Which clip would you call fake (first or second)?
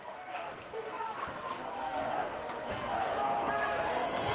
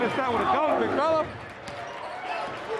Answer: first